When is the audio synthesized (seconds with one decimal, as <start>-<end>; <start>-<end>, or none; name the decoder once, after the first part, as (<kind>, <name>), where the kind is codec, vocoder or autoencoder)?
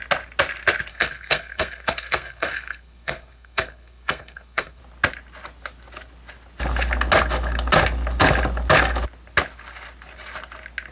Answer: 0.9-4.8 (codec, SNAC)